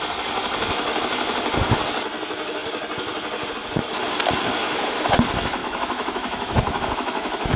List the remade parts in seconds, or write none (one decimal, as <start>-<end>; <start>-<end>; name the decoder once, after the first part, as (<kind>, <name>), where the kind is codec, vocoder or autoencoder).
4.6-5.1 (autoencoder, DAC-VAE); 5.6-7.6